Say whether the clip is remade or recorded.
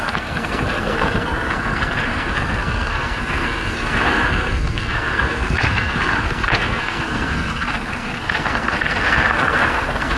remade